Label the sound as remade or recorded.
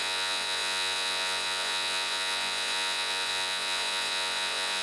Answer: remade